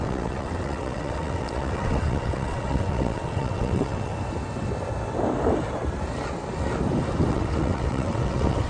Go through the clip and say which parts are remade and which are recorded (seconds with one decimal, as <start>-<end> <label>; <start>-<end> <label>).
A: 0.0-4.1 remade; 4.1-7.3 recorded; 7.3-8.7 remade